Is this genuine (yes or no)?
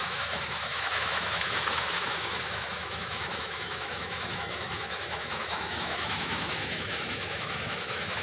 no